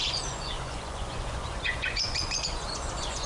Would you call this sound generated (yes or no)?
yes